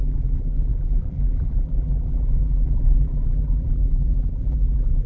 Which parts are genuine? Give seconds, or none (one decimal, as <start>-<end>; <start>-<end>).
none